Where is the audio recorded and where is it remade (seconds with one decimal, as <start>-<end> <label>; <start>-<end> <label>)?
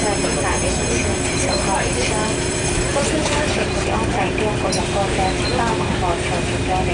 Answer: 0.0-1.1 recorded; 1.1-4.8 remade; 4.8-6.9 recorded